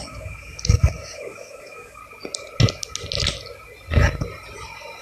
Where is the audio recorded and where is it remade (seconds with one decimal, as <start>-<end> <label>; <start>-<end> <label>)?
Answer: 0.0-2.0 remade; 2.0-5.0 recorded